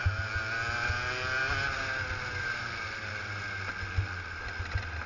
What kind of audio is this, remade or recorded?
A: recorded